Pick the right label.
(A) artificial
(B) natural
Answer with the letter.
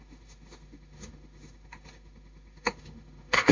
A